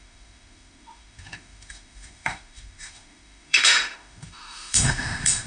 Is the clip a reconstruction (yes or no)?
yes